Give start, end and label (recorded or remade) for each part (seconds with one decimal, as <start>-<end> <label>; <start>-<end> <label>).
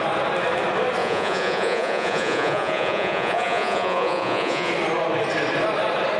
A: 0.0-1.0 recorded; 1.0-4.7 remade; 4.7-6.2 recorded